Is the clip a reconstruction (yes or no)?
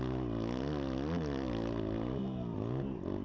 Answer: no